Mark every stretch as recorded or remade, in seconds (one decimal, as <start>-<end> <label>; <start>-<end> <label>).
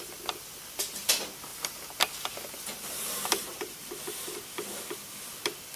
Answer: 0.0-1.5 recorded; 1.5-3.9 remade; 3.9-5.8 recorded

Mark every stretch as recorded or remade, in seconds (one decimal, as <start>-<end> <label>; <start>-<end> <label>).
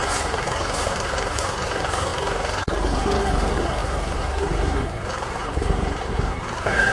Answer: 0.0-6.9 remade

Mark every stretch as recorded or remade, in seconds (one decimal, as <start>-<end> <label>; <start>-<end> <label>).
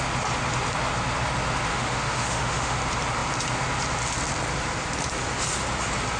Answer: 0.0-1.7 recorded; 1.7-2.8 remade; 2.8-6.2 recorded